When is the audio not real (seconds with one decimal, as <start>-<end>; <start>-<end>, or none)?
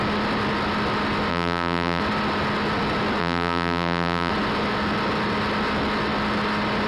1.3-2.0; 3.2-4.3